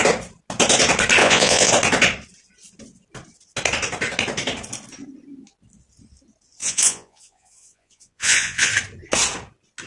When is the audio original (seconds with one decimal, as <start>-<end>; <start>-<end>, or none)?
0.0-1.2; 1.7-6.6; 8.7-9.9